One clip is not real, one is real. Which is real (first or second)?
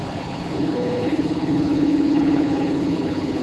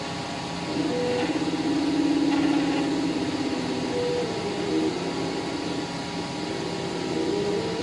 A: second